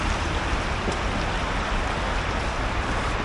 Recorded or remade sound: recorded